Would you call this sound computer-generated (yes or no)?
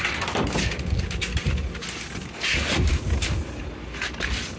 no